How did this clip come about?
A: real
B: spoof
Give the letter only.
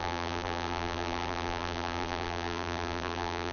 B